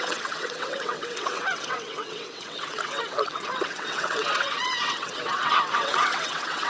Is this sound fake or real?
fake